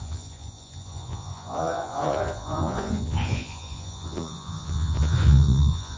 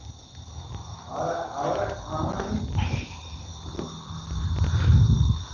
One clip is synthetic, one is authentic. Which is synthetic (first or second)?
first